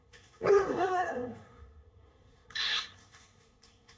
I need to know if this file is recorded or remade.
remade